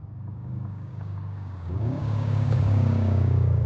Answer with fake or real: fake